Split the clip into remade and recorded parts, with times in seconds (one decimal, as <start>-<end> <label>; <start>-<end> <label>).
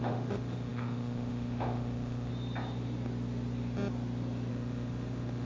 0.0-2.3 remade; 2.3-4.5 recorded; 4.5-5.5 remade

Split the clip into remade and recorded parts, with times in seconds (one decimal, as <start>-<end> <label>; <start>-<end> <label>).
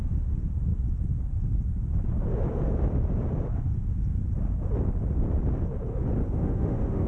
0.0-6.2 recorded; 6.2-7.1 remade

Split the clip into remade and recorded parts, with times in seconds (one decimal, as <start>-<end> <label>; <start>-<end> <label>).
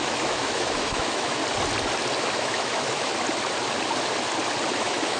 0.0-1.4 remade; 1.4-2.2 recorded; 2.2-3.1 remade; 3.1-4.7 recorded; 4.7-5.2 remade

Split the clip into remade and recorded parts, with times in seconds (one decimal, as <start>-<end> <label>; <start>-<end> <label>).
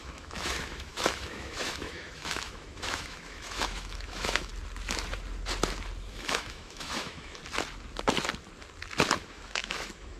0.0-4.5 remade; 4.5-6.1 recorded; 6.1-7.4 remade; 7.4-9.2 recorded; 9.2-10.2 remade